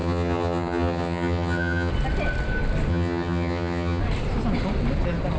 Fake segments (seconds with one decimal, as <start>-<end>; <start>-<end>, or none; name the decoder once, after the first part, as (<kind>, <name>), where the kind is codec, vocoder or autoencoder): 0.0-1.9 (vocoder, HiFi-GAN); 2.9-4.0